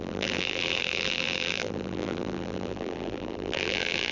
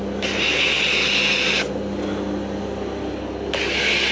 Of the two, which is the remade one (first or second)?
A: first